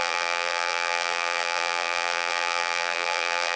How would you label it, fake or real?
fake